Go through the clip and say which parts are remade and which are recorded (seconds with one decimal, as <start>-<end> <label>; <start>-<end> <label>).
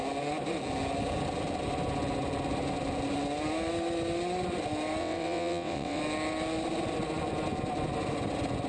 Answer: 0.0-5.0 recorded; 5.0-6.0 remade; 6.0-8.7 recorded